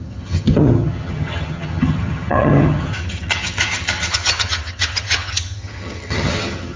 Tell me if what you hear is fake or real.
fake